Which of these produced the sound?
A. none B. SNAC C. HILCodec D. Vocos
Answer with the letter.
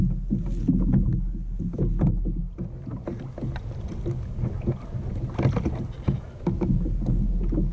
A